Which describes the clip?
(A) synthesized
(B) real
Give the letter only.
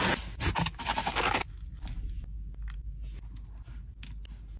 B